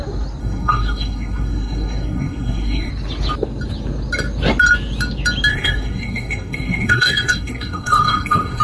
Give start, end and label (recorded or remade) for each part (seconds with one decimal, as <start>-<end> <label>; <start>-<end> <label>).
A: 0.0-0.4 recorded; 0.4-2.9 remade; 2.9-5.5 recorded; 5.5-8.6 remade